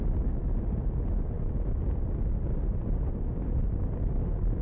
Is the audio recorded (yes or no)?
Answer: yes